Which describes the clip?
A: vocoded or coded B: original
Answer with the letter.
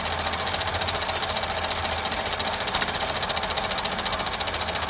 B